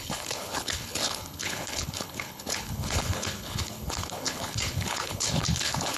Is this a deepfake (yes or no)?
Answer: yes